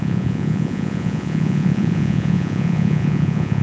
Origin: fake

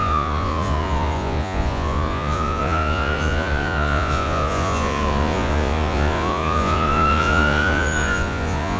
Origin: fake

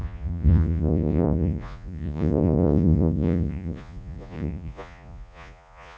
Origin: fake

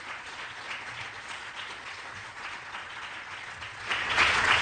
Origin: fake